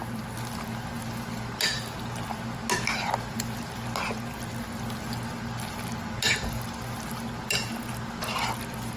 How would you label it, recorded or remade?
recorded